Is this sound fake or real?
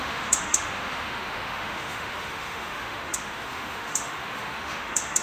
fake